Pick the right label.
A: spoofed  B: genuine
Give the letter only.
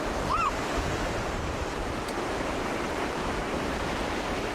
A